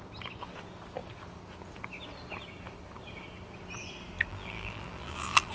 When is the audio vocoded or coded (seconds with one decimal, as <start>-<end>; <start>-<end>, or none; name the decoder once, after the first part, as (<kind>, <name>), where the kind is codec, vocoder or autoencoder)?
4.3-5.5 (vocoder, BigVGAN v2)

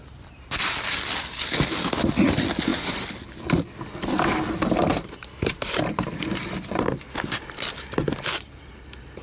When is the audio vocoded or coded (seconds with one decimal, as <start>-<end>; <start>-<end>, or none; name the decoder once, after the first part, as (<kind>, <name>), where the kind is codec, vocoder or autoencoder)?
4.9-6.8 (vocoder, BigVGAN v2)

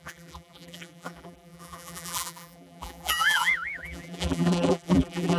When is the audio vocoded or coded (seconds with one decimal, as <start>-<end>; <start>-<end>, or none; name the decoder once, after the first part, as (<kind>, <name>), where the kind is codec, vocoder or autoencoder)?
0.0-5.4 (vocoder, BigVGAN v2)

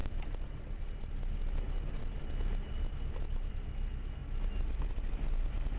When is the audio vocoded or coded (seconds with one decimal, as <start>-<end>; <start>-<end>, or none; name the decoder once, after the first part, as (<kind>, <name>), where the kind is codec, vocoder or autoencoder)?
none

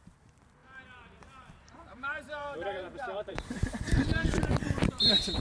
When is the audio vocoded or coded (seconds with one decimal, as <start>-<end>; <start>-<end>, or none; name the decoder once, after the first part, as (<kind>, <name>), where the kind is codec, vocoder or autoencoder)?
0.0-5.4 (vocoder, BigVGAN v2)